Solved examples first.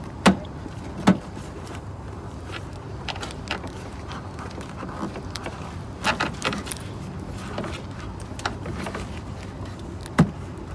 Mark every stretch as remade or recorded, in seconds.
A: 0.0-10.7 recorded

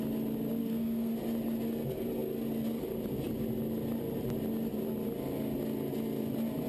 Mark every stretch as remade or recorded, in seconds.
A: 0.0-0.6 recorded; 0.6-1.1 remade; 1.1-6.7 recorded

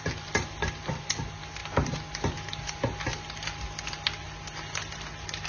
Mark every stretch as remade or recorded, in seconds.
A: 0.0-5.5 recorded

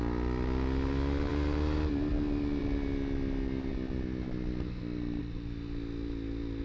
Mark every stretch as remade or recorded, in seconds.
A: 0.0-6.6 recorded

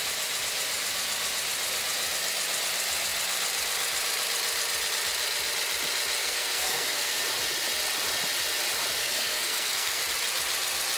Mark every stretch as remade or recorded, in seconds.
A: 0.0-6.2 recorded; 6.2-7.2 remade; 7.2-9.0 recorded; 9.0-10.0 remade; 10.0-11.0 recorded

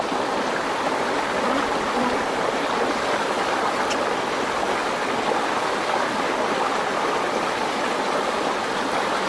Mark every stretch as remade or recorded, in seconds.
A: 0.0-9.3 recorded